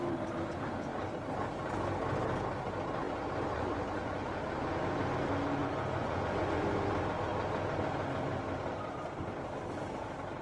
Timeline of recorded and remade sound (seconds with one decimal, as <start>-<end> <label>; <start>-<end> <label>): 0.0-3.5 recorded; 3.5-4.4 remade; 4.4-5.6 recorded; 5.6-6.5 remade; 6.5-10.4 recorded